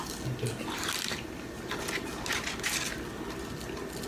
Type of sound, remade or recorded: recorded